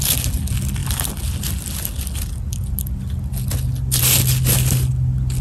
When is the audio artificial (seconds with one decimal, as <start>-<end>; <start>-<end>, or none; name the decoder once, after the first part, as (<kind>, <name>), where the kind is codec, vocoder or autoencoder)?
none